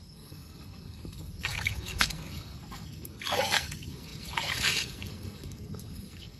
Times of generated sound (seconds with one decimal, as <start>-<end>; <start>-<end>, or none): 0.0-6.4